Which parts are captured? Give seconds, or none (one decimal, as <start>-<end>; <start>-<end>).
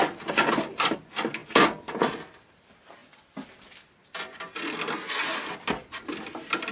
0.0-6.7